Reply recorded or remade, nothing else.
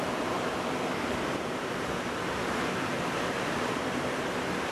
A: remade